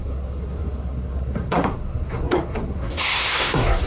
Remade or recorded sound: remade